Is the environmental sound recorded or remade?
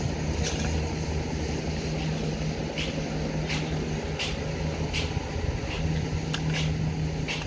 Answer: recorded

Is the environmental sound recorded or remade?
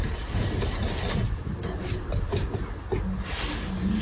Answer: recorded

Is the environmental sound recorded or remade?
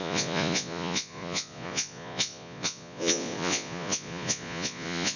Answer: remade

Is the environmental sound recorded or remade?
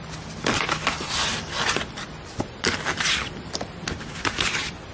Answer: recorded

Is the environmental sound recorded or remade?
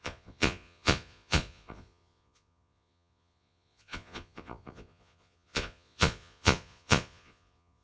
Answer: remade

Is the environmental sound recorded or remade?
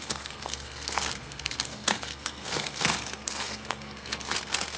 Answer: remade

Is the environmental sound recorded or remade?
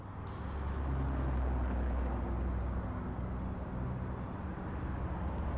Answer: recorded